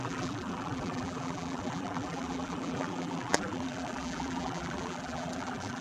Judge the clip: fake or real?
fake